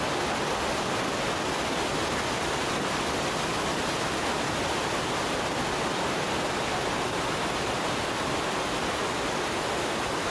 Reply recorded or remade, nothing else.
recorded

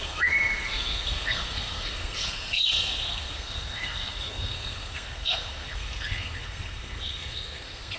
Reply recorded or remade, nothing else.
remade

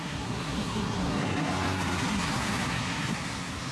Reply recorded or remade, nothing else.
remade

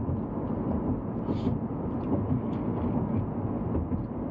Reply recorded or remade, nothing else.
recorded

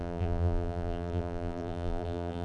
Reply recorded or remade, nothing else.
remade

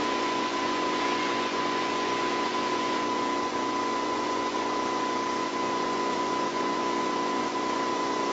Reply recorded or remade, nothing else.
remade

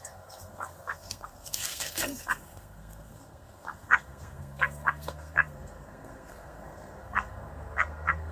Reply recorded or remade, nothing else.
remade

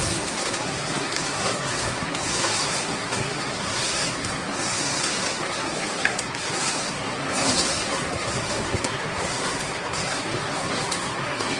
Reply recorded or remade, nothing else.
remade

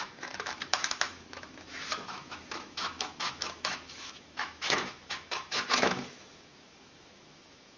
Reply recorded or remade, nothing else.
remade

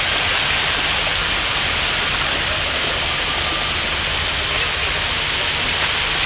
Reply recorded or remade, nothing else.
recorded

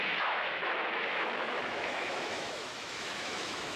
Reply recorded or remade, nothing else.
remade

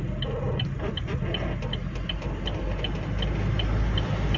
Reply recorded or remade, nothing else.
recorded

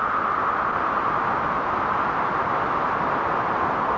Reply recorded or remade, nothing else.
recorded